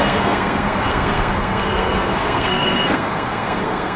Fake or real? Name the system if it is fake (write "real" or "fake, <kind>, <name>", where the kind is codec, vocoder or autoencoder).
fake, codec, SNAC